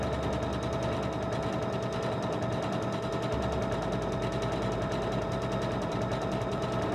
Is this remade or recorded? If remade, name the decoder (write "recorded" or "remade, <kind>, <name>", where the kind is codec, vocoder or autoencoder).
recorded